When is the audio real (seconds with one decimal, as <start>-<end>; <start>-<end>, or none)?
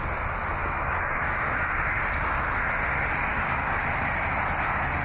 0.0-0.6; 2.0-3.3; 3.8-5.0